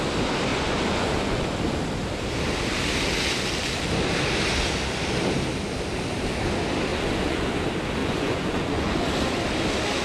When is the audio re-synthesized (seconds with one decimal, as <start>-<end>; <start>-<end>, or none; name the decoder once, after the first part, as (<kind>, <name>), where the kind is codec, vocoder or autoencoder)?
0.5-1.5 (vocoder, Vocos); 6.9-7.6; 8.0-9.1

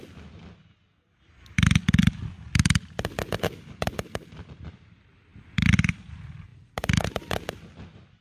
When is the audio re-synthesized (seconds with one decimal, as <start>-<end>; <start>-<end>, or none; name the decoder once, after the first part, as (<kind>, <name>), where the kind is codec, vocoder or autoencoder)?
none

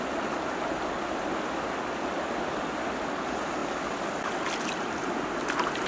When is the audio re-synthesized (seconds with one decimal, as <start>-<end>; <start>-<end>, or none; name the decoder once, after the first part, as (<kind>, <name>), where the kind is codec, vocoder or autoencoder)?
none

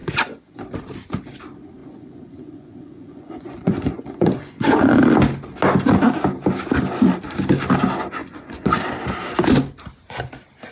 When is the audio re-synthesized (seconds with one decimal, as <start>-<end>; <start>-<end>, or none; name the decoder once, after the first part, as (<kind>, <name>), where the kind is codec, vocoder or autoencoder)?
0.0-0.6 (vocoder, Vocos); 1.8-5.0; 8.2-8.9